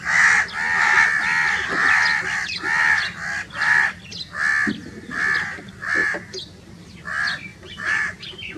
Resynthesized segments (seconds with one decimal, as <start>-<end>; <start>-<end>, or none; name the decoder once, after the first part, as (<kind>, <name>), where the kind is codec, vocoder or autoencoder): 6.0-6.7 (vocoder, BigVGAN v2); 7.5-8.6